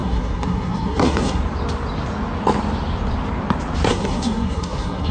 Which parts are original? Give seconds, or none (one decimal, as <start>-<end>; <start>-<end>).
1.4-3.9